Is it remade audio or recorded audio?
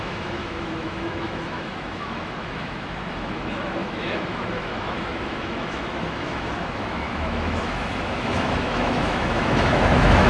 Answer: remade